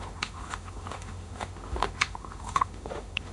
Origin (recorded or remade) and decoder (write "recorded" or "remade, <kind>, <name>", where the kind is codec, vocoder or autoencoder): remade, autoencoder, DAC-VAE